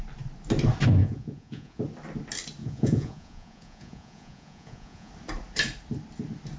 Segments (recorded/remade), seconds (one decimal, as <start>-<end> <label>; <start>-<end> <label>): 0.0-1.0 recorded; 1.0-1.8 remade; 1.8-2.6 recorded; 2.6-5.1 remade; 5.1-6.6 recorded